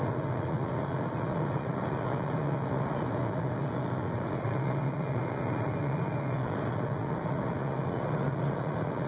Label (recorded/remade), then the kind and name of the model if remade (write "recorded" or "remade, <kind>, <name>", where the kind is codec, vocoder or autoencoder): remade, vocoder, Vocos